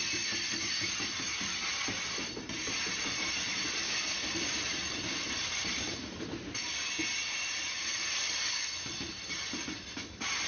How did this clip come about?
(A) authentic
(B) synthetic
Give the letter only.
B